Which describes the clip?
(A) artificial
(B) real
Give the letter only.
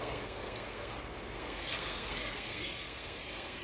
A